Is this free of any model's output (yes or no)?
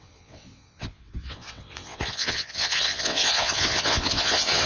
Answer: no